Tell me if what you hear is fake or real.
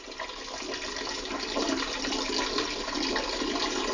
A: real